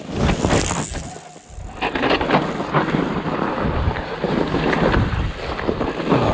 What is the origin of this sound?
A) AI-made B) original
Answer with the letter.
B